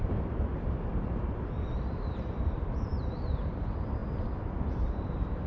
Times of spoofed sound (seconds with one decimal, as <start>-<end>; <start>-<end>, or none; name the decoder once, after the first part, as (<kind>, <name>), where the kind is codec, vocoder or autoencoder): 0.0-4.0 (vocoder, BigVGAN v2); 4.7-5.5